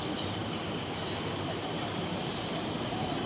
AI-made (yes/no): yes